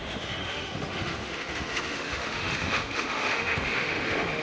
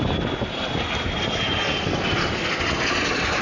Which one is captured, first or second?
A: second